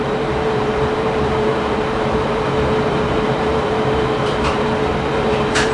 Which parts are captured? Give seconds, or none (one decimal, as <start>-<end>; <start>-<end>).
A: none